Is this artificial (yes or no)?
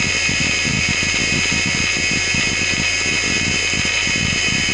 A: no